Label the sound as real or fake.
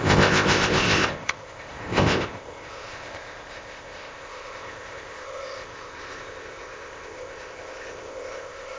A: fake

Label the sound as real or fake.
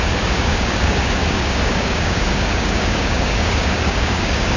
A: fake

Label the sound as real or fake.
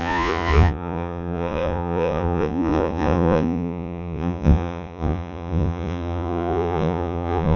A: fake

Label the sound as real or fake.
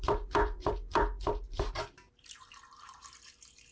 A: fake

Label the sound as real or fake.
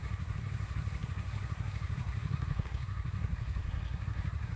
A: fake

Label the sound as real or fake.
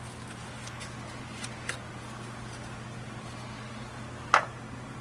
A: real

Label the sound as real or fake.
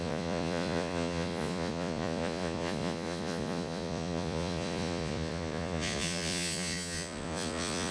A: fake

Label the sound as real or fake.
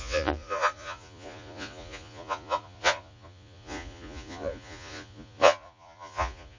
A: fake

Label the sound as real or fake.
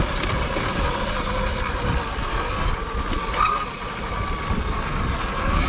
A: real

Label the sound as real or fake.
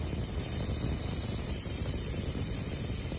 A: real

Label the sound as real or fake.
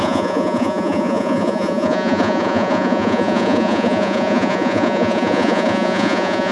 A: fake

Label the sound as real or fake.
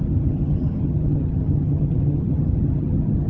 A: fake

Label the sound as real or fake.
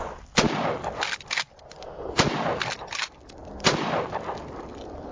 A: real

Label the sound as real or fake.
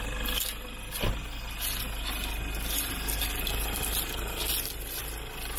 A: real